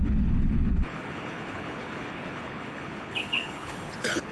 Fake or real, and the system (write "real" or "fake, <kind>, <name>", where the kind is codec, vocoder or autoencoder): fake, codec, HILCodec